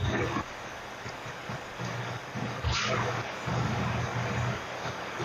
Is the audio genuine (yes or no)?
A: no